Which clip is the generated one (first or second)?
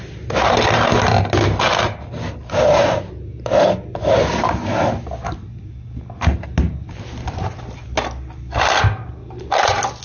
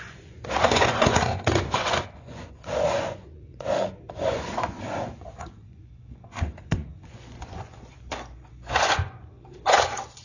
second